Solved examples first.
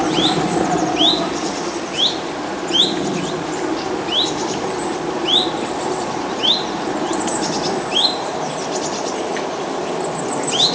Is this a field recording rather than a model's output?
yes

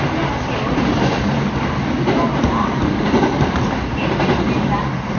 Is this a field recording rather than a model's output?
yes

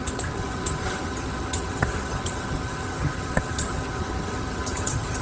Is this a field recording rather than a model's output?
no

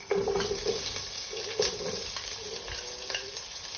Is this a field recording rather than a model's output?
yes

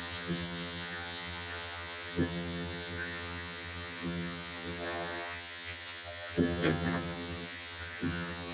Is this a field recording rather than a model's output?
no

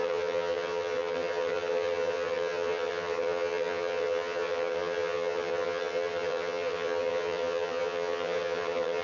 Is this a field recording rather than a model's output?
no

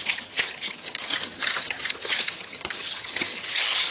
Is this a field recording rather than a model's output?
no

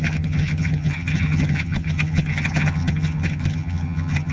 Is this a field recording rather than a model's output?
no